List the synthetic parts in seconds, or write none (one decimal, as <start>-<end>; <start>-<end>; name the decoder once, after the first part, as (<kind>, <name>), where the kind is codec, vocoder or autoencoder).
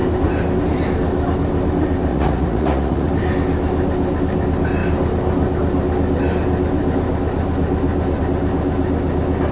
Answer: 2.1-3.1 (vocoder, Vocos)